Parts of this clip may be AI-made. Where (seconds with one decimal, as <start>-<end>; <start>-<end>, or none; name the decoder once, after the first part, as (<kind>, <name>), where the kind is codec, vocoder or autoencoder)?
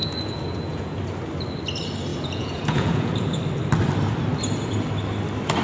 0.0-1.0 (vocoder, Vocos); 2.1-3.4